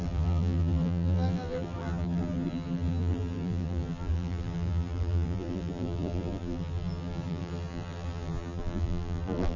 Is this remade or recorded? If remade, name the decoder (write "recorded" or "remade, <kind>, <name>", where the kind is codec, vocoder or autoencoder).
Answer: remade, vocoder, BigVGAN v2